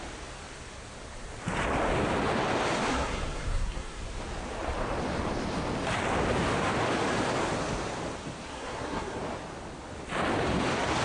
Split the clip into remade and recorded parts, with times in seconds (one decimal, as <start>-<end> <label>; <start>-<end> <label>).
0.0-2.9 recorded; 2.9-4.0 remade; 4.0-8.5 recorded; 8.5-9.2 remade; 9.2-11.0 recorded